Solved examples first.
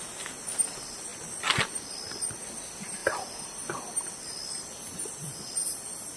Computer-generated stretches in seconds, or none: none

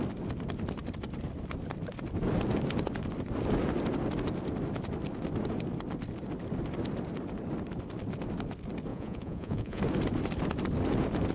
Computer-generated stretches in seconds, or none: 8.9-9.8 (vocoder, Vocos)

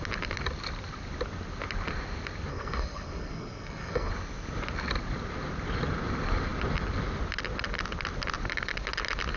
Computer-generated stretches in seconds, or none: 2.5-4.1 (codec, SNAC)

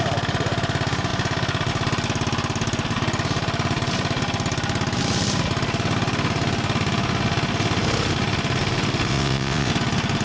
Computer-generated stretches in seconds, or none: 9.1-9.7 (vocoder, WaveNeXt)

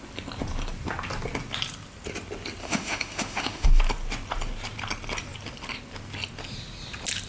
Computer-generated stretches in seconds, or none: 2.6-3.8 (autoencoder, DAC-VAE)

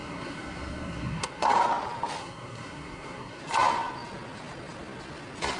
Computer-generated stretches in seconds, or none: 0.0-1.5 (codec, SNAC); 2.2-3.4

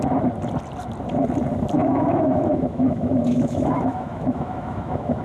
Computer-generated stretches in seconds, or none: 1.8-5.2 (autoencoder, DAC-VAE)